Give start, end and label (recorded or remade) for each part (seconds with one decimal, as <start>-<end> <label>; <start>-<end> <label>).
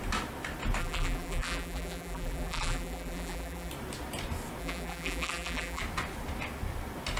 0.0-0.8 recorded; 0.8-3.7 remade; 3.7-4.6 recorded; 4.6-5.8 remade; 5.8-7.2 recorded